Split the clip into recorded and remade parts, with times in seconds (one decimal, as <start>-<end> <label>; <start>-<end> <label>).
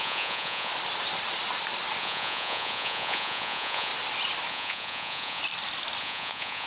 0.0-0.7 remade; 0.7-2.0 recorded; 2.0-3.9 remade; 3.9-4.5 recorded; 4.5-5.4 remade; 5.4-6.0 recorded; 6.0-6.7 remade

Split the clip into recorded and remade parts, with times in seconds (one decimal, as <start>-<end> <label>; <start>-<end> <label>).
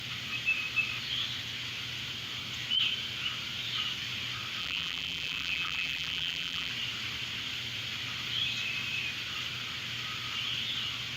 0.0-4.6 recorded; 4.6-6.7 remade; 6.7-11.2 recorded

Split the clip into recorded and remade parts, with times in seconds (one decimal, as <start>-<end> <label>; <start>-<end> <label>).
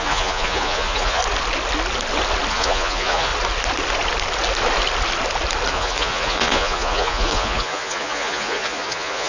0.0-1.2 remade; 1.2-2.5 recorded; 2.5-3.3 remade; 3.3-5.7 recorded; 5.7-9.3 remade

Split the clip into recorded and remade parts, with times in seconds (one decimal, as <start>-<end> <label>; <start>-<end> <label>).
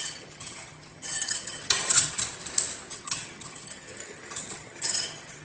0.0-2.2 remade; 2.2-2.9 recorded; 2.9-5.4 remade